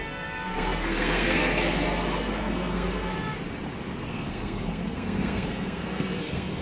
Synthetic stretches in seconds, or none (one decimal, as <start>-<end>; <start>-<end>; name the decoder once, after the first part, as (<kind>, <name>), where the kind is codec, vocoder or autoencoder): 0.0-3.1 (codec, SNAC); 4.1-6.6